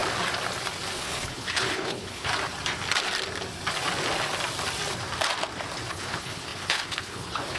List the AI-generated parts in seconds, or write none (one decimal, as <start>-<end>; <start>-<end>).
1.0-2.3; 5.9-7.6